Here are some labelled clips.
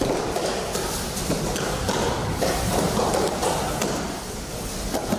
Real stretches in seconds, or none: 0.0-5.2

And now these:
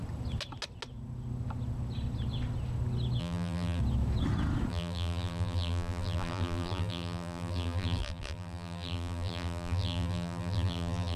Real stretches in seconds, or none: 0.0-3.2; 3.8-4.7

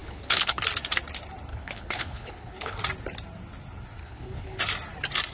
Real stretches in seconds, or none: 0.6-1.5; 2.8-4.0; 4.6-5.3